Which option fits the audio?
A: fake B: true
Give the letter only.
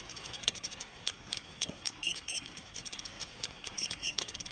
A